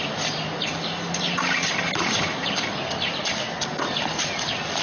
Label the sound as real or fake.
real